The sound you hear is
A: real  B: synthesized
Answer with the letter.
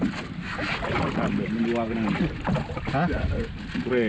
A